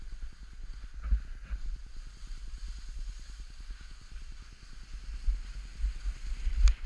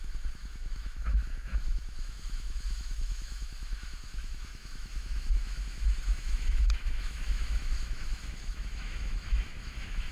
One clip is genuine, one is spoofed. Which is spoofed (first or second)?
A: second